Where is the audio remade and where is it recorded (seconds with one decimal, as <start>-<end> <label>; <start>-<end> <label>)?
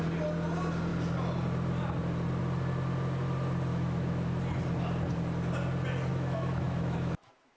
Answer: 0.0-3.7 recorded; 3.7-4.4 remade; 4.4-6.1 recorded; 6.1-7.6 remade